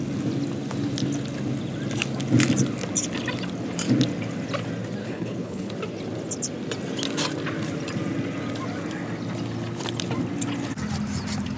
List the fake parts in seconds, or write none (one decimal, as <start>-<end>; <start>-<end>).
5.0-5.7